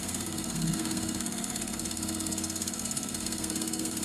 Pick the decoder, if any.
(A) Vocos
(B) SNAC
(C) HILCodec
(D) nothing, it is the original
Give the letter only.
B